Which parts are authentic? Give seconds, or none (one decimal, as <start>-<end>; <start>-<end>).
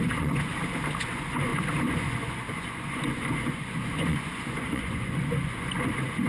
0.5-1.0